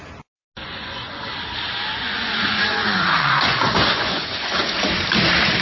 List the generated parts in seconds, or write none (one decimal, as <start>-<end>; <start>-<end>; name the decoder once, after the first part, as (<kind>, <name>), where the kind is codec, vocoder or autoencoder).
0.6-1.2 (vocoder, Vocos); 1.9-4.8